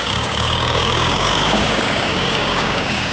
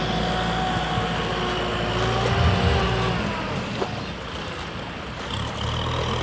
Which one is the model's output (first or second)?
first